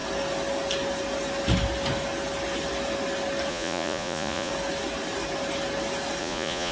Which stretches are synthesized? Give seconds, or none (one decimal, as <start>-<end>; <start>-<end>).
3.5-4.5; 6.2-6.7